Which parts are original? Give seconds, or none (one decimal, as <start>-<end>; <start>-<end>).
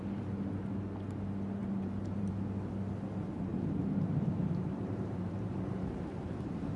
0.0-1.6; 2.3-3.5